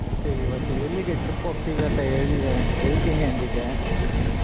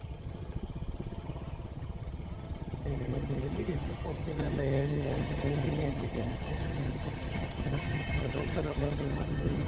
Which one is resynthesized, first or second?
second